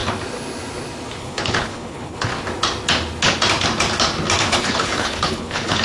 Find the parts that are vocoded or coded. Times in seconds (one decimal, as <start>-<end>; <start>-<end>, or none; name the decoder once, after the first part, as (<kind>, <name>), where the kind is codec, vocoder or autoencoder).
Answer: 1.2-2.3 (codec, HILCodec); 4.4-5.8